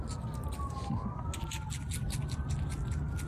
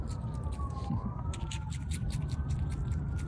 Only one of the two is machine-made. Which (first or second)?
second